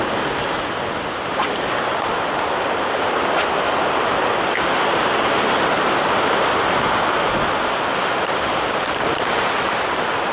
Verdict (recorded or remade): recorded